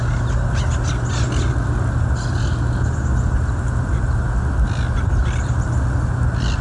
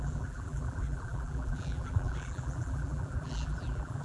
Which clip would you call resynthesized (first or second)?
second